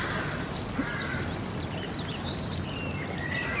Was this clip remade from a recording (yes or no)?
no